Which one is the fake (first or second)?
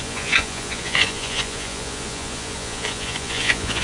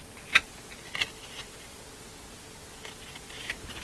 first